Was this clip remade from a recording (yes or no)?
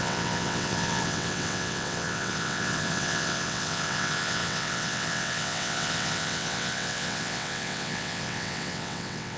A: yes